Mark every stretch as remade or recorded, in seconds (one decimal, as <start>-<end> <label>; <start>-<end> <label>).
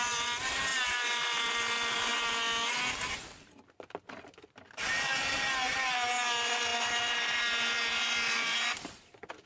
0.0-9.5 recorded